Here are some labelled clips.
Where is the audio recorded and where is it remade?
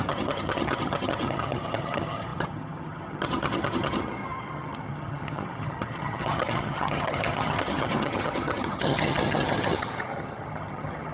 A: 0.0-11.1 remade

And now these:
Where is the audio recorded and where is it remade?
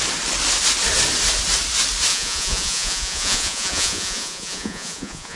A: 0.0-2.1 recorded; 2.1-5.4 remade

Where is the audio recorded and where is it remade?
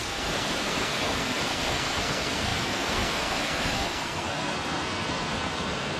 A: 0.0-6.0 remade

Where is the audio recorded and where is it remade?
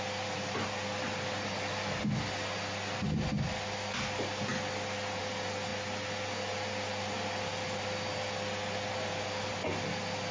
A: 0.0-10.3 recorded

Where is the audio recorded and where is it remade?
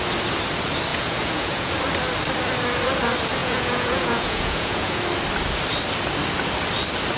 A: 0.0-0.9 recorded; 0.9-1.7 remade; 1.7-3.4 recorded; 3.4-5.0 remade; 5.0-7.2 recorded